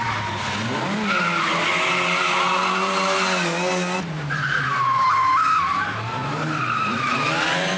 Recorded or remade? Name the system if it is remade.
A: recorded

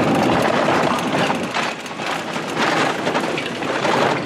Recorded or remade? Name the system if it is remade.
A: recorded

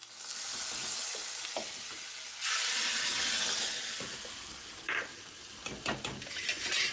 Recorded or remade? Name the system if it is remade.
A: recorded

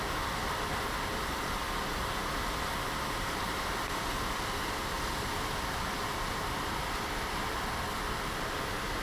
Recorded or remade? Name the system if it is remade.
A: recorded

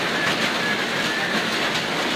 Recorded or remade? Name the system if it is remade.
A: recorded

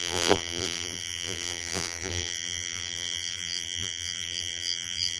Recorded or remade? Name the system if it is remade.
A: remade, vocoder, BigVGAN v2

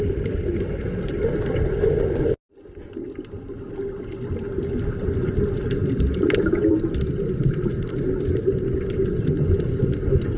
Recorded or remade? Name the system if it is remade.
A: recorded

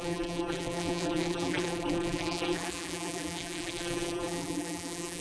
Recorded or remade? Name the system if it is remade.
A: remade, vocoder, BigVGAN v2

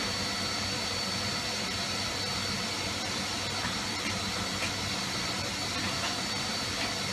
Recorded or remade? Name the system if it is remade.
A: recorded